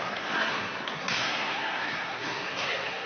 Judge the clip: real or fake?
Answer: fake